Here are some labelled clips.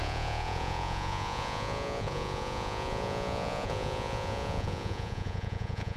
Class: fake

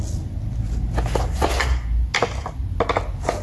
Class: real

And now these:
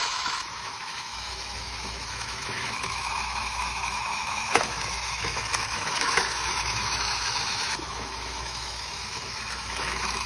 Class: fake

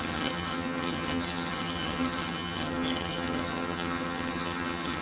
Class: fake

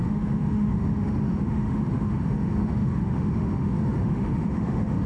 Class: fake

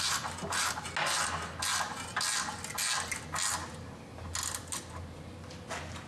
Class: real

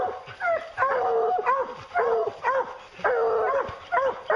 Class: real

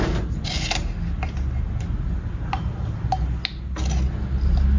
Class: real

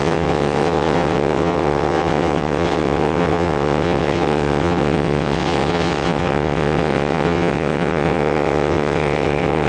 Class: fake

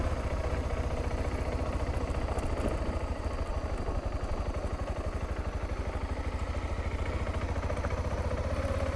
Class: real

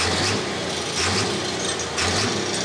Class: real